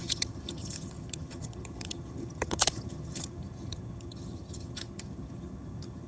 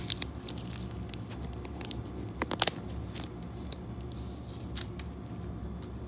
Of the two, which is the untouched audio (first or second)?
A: second